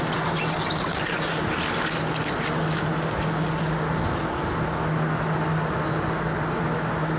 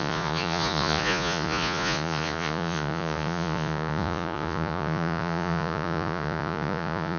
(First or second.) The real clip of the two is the first